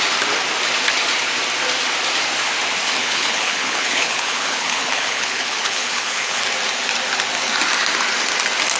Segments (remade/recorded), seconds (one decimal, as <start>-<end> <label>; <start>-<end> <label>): 0.0-3.0 recorded; 3.0-6.4 remade; 6.4-8.8 recorded